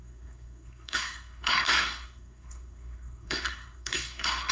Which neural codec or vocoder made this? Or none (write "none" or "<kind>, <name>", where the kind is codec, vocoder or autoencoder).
codec, SNAC